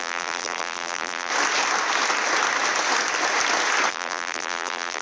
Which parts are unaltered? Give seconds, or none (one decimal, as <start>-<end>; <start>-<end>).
1.3-3.9